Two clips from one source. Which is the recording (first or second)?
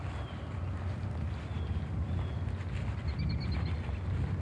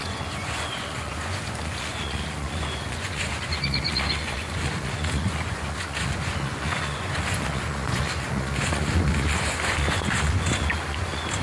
first